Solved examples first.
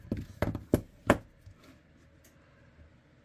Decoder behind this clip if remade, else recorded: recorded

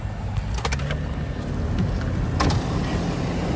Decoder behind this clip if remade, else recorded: recorded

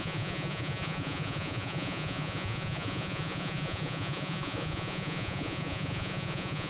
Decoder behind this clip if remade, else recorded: remade, vocoder, Vocos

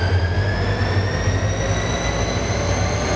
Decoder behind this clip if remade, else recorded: recorded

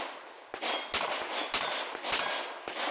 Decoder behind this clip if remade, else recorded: recorded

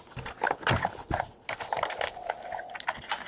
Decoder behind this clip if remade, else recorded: recorded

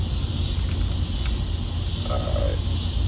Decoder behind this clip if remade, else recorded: recorded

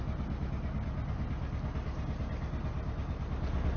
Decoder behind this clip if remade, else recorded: recorded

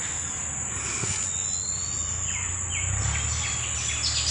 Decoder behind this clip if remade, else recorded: recorded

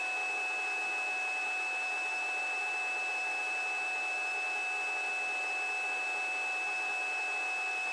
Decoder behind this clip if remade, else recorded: recorded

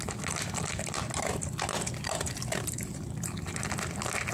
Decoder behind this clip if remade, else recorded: recorded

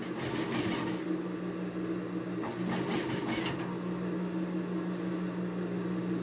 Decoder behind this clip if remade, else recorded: recorded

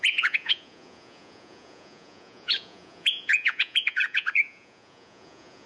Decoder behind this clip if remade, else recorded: remade, vocoder, Vocos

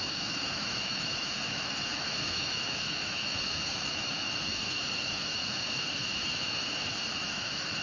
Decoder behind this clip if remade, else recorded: remade, autoencoder, DAC-VAE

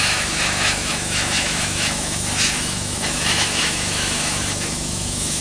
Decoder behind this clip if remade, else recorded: remade, autoencoder, DAC-VAE